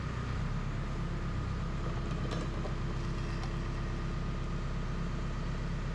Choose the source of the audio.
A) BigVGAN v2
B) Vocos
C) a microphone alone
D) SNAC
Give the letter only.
C